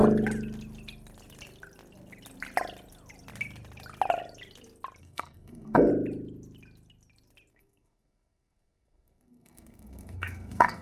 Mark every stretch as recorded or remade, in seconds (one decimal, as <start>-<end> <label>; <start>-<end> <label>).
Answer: 0.0-5.0 recorded; 5.0-5.9 remade; 5.9-7.5 recorded; 7.5-10.8 remade